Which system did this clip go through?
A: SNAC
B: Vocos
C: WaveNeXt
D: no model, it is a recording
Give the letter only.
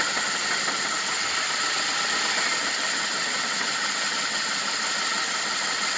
D